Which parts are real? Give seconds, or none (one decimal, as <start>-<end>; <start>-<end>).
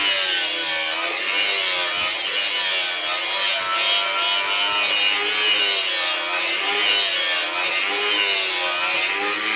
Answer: 0.0-9.6